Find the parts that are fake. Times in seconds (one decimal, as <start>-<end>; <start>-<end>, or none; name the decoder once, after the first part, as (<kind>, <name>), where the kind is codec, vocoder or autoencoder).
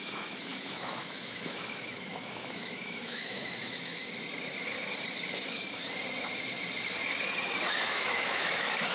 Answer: 0.0-4.0 (autoencoder, DAC-VAE); 7.8-8.9